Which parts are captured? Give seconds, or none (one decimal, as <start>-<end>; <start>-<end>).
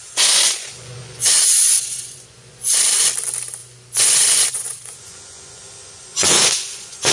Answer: 2.7-3.6